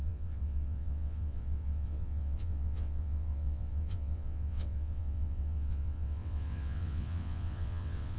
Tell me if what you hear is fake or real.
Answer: fake